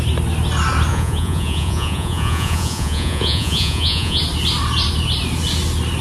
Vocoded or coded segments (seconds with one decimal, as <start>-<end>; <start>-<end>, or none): 0.9-4.2